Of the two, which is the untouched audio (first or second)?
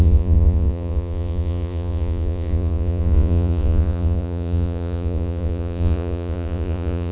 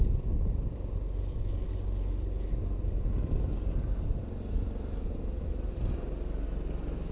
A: second